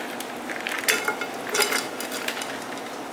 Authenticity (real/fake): real